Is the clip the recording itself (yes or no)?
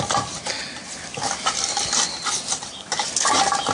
yes